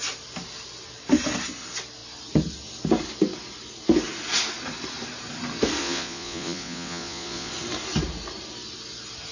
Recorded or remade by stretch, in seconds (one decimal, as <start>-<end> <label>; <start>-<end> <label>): 0.0-5.8 recorded; 5.8-7.5 remade; 7.5-9.3 recorded